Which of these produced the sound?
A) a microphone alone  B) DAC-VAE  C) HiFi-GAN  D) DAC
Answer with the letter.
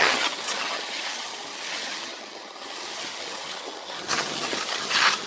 C